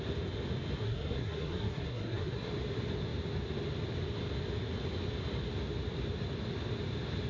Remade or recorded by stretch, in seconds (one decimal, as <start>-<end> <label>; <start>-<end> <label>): 0.0-0.8 recorded; 0.8-2.5 remade; 2.5-7.3 recorded